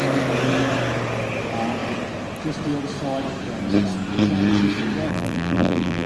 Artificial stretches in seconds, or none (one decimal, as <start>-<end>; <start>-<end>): 5.1-6.1